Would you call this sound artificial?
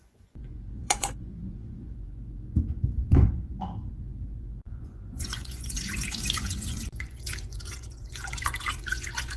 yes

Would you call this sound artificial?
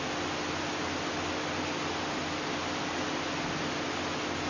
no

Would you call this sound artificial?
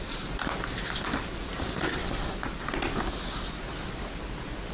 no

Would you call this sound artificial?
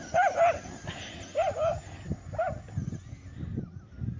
no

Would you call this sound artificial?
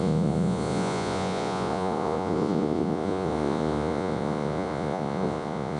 yes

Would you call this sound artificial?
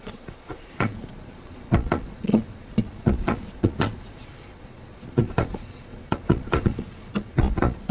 yes